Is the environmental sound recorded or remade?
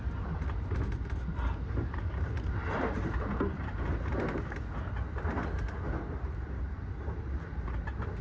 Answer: recorded